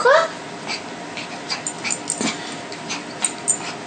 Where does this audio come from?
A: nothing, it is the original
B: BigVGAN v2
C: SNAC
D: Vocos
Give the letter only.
A